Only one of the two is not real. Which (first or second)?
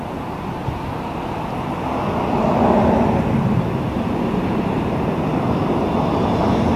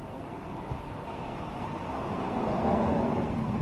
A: second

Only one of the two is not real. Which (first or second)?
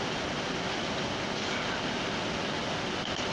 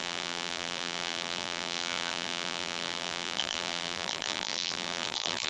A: second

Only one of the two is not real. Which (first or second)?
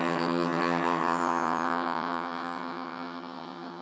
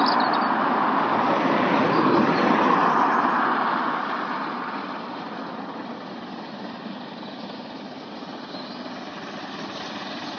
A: first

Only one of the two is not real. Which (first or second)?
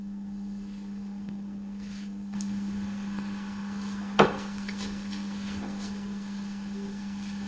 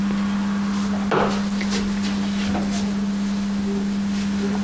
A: first